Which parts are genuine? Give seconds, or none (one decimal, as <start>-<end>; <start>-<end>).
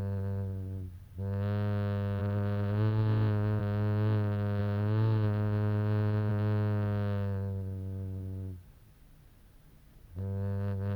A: 0.0-2.2; 3.6-4.6; 6.3-11.0